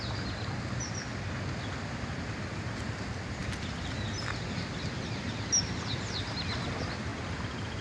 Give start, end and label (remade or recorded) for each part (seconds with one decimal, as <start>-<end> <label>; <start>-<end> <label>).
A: 0.0-7.8 recorded